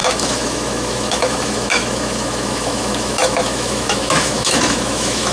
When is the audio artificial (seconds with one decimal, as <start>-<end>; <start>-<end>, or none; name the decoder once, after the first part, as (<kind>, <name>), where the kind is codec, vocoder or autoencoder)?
0.0-5.3 (autoencoder, DAC-VAE)